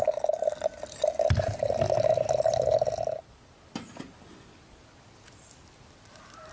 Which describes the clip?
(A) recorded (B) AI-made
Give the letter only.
A